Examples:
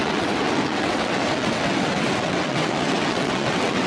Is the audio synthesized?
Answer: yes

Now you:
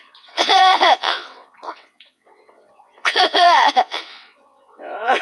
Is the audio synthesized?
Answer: yes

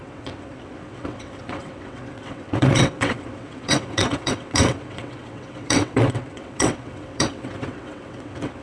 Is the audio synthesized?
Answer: yes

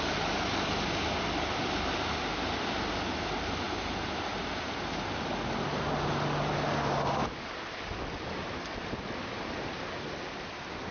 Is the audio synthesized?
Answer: no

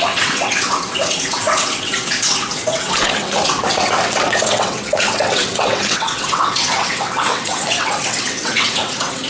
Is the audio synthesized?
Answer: yes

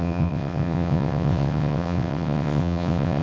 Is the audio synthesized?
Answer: yes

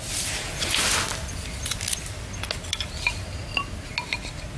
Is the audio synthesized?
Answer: no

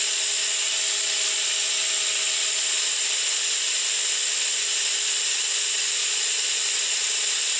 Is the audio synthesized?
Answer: no